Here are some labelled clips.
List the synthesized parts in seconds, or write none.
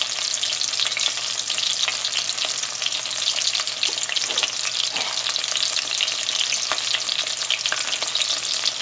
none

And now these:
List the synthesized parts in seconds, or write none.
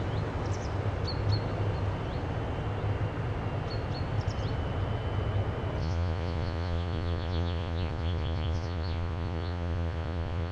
5.8-10.5 (vocoder, Vocos)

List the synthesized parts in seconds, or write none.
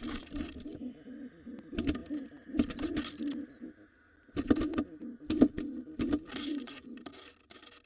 6.5-7.0 (vocoder, Vocos)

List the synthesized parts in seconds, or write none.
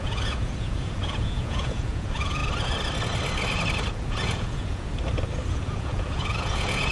0.0-2.4 (vocoder, Vocos); 3.9-4.9; 5.5-6.9